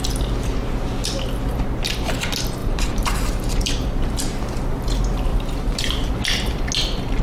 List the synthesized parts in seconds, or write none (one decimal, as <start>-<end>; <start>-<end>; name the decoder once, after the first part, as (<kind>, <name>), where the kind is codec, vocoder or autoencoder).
2.6-4.0 (vocoder, BigVGAN v2); 5.3-6.1